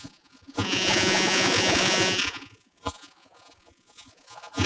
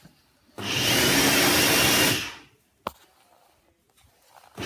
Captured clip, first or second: second